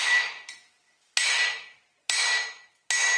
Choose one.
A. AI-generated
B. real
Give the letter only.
B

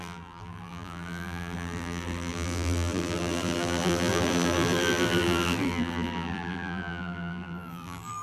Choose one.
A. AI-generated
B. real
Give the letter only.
A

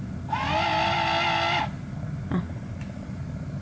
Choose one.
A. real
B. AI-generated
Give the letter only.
A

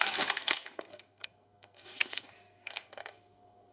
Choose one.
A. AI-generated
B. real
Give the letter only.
A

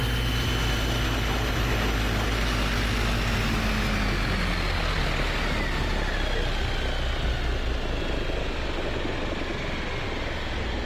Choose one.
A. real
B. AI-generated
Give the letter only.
A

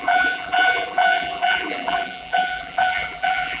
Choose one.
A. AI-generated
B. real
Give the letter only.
A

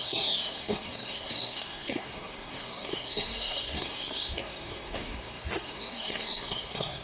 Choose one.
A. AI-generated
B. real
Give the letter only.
A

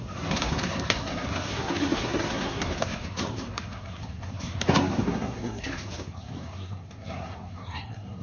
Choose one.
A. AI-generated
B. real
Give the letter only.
A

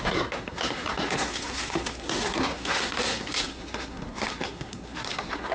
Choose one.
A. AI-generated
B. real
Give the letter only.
A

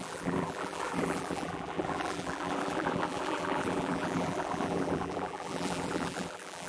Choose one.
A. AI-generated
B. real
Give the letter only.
A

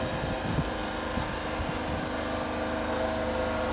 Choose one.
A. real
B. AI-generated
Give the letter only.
A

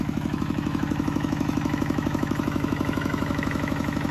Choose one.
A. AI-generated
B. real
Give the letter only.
A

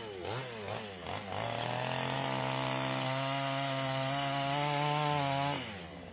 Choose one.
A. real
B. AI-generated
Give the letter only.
A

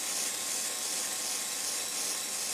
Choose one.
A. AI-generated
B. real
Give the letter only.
B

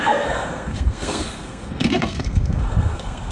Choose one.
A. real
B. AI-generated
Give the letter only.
B